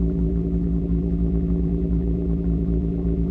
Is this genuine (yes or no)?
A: no